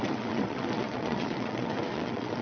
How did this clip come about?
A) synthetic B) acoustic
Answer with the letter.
A